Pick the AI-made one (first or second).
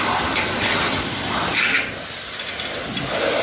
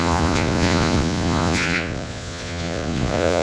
second